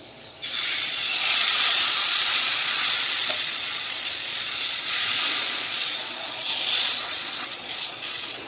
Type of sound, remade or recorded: remade